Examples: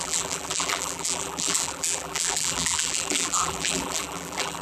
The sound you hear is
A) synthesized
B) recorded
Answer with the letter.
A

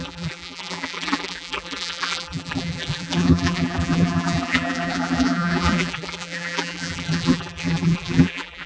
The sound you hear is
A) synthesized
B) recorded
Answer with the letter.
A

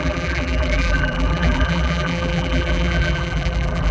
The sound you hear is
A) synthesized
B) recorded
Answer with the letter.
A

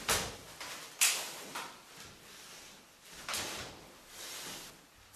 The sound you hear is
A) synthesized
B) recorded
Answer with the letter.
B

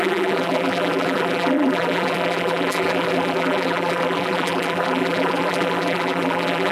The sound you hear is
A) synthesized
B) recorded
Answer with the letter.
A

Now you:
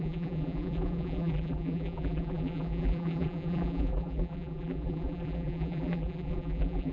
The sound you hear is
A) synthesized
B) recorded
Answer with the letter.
A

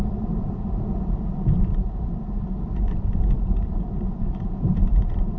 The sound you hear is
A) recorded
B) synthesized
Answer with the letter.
B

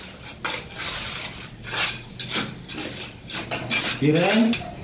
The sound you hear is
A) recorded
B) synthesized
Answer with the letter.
A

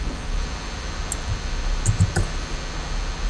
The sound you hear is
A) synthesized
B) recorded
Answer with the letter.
B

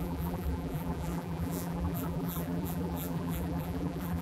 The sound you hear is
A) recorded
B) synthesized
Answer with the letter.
B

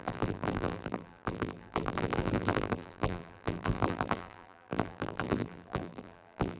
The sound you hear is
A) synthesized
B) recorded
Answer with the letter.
A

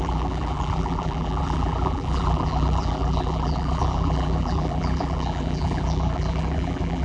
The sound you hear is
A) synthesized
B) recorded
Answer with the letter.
A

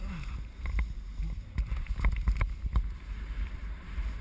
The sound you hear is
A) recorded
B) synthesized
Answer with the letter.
B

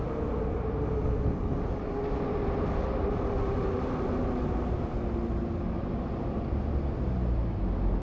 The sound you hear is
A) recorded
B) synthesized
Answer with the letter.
A